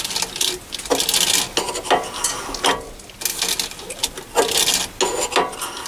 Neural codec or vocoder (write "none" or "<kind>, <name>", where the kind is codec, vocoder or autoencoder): none